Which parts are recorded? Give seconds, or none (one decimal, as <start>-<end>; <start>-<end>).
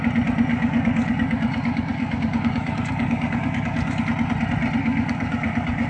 0.0-0.5; 4.0-4.8